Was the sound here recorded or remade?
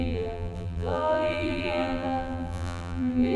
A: remade